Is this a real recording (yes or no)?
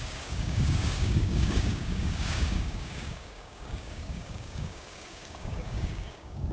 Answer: no